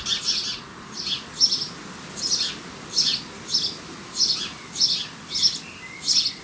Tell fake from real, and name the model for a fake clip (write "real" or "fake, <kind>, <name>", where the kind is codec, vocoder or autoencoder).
real